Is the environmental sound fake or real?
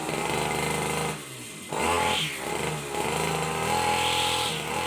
real